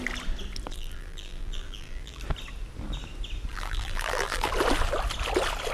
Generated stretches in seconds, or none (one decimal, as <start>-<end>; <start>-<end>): 0.7-2.2; 3.5-4.5